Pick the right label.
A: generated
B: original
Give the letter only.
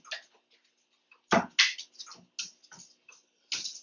B